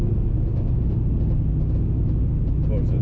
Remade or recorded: recorded